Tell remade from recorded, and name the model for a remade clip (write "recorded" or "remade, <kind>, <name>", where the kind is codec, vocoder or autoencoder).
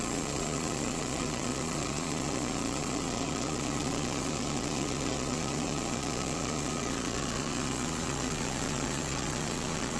remade, vocoder, Vocos